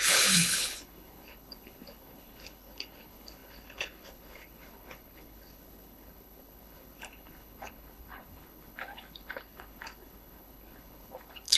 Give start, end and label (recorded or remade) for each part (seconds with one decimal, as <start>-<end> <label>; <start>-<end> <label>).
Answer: 0.0-11.6 remade